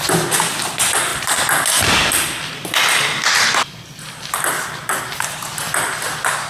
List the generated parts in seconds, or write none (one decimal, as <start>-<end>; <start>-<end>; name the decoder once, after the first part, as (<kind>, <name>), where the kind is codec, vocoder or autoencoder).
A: none